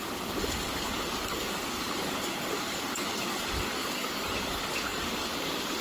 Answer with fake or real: fake